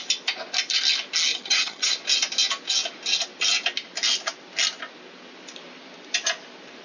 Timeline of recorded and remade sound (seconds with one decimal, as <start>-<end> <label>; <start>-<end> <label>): 0.0-1.3 recorded; 1.3-1.9 remade; 1.9-6.8 recorded

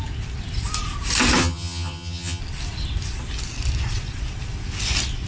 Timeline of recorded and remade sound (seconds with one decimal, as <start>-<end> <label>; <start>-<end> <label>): 0.0-1.4 recorded; 1.4-2.4 remade; 2.4-5.3 recorded

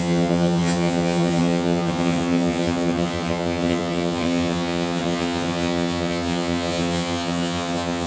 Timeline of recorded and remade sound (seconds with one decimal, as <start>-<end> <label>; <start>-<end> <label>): 0.0-8.1 remade

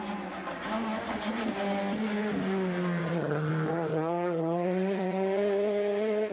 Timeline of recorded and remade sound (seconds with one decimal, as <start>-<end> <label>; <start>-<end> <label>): 0.0-3.0 recorded; 3.0-3.5 remade; 3.5-3.9 recorded; 3.9-6.3 remade

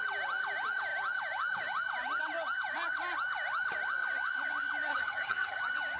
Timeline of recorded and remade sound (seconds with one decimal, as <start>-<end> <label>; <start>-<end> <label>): 0.0-4.9 recorded; 4.9-5.6 remade; 5.6-6.0 recorded

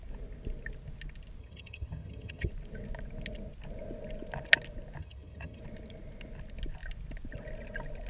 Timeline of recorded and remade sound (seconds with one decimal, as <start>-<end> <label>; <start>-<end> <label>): 0.0-1.4 recorded; 1.4-2.5 remade; 2.5-5.0 recorded; 5.0-5.6 remade; 5.6-8.1 recorded

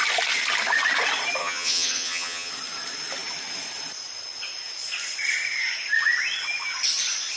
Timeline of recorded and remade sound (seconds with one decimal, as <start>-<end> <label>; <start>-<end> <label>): 0.0-1.4 recorded; 1.4-2.5 remade; 2.5-7.4 recorded